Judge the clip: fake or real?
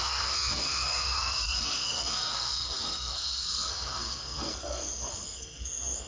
fake